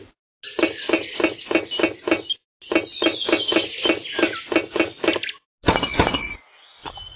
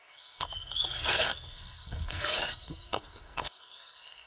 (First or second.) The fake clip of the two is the second